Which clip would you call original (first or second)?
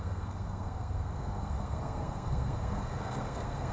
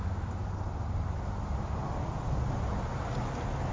second